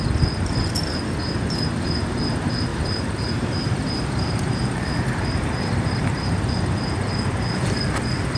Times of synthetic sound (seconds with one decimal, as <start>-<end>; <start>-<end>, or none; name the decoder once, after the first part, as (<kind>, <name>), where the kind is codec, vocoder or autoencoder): 2.7-6.5 (vocoder, BigVGAN v2)